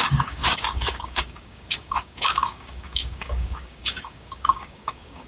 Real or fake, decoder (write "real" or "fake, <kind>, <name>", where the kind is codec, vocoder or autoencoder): fake, codec, DAC